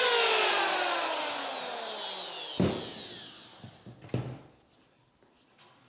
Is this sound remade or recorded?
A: recorded